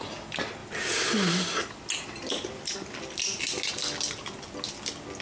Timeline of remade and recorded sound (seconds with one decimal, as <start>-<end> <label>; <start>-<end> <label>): 0.0-5.2 recorded